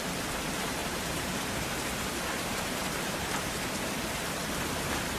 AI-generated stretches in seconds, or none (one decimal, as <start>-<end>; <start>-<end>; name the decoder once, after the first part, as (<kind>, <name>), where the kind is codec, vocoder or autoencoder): 0.8-3.9 (vocoder, BigVGAN v2)